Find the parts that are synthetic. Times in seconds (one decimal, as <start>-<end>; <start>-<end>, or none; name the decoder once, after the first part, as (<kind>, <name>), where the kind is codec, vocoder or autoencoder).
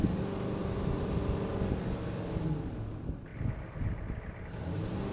0.6-1.5 (vocoder, BigVGAN v2)